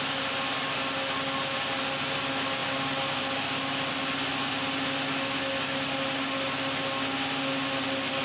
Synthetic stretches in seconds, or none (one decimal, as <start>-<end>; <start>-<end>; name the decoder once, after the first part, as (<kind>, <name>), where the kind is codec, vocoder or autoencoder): none